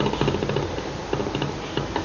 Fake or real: real